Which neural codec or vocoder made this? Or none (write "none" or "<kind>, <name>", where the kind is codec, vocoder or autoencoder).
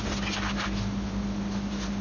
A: none